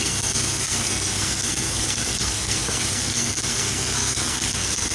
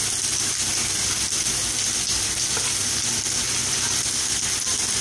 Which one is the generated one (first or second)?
first